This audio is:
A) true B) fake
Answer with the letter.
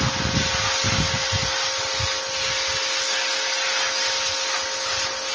A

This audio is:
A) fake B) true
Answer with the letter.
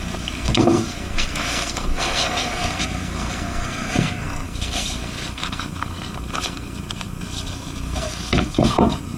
A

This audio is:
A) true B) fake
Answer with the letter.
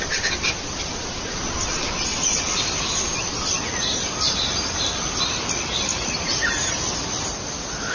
A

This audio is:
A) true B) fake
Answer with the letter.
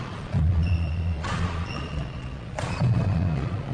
B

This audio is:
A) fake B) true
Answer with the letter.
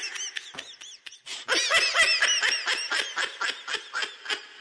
B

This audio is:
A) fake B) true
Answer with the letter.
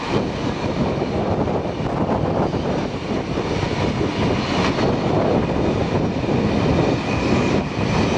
B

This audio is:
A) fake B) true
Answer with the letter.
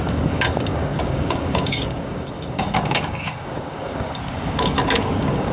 A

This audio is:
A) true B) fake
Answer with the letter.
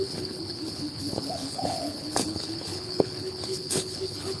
B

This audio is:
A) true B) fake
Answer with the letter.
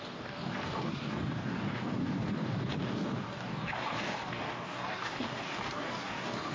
B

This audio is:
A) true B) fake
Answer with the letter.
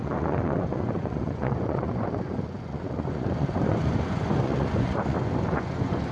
B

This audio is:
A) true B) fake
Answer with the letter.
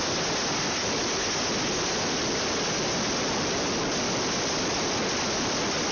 A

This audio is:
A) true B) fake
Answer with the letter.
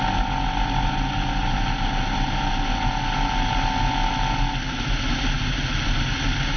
A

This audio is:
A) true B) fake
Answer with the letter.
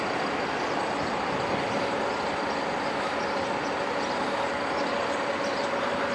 A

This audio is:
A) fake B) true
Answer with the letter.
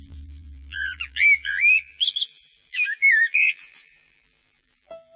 A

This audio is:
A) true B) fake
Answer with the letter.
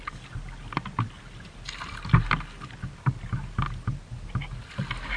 A